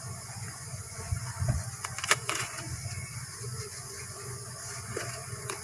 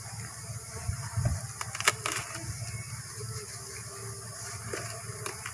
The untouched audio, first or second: second